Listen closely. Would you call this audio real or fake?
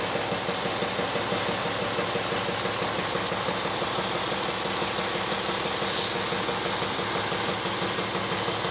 real